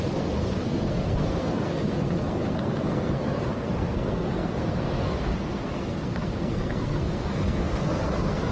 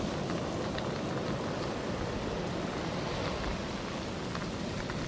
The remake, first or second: first